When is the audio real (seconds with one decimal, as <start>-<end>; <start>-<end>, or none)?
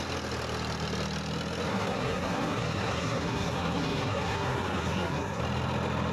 0.0-1.7; 5.4-6.1